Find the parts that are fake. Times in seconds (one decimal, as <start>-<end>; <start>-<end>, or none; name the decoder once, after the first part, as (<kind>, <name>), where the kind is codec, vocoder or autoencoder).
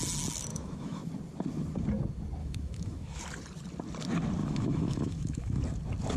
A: 0.5-1.1 (autoencoder, DAC-VAE); 2.4-3.2; 4.4-5.6